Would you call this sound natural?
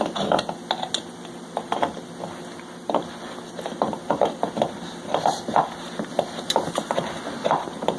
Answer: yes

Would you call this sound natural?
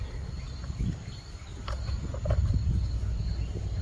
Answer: yes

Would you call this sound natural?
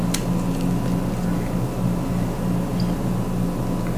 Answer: yes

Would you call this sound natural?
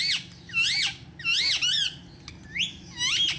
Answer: yes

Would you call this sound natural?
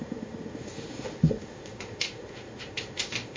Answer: no